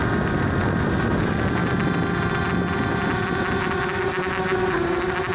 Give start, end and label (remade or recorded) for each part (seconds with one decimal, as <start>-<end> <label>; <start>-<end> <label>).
0.0-5.3 recorded